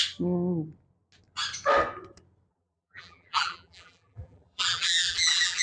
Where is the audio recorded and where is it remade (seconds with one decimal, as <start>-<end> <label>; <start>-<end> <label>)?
0.0-2.5 recorded; 2.5-5.6 remade